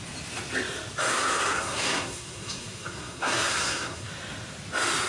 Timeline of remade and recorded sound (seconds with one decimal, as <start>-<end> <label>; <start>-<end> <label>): 0.0-1.1 recorded; 1.1-4.1 remade; 4.1-5.1 recorded